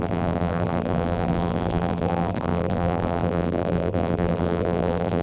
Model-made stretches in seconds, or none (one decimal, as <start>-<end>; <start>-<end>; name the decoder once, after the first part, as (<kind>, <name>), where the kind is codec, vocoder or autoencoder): 0.0-5.2 (vocoder, BigVGAN v2)

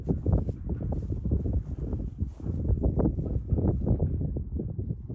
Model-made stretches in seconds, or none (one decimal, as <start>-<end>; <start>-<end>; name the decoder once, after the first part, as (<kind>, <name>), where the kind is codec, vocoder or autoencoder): none

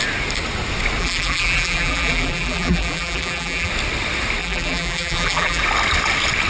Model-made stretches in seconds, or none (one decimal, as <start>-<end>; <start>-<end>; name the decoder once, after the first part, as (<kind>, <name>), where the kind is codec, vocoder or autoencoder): 1.0-3.7 (vocoder, BigVGAN v2); 4.4-5.6

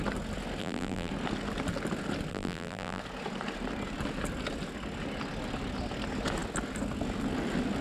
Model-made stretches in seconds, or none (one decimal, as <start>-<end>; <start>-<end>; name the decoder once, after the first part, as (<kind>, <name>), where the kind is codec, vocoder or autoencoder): 0.6-1.1 (vocoder, BigVGAN v2); 2.3-3.0